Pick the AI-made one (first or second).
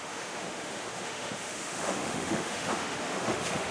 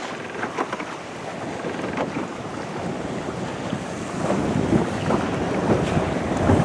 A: first